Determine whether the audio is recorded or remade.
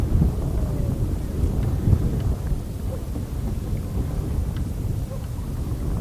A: recorded